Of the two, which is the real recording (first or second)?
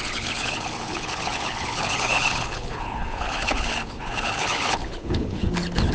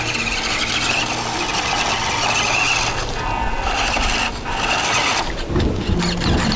second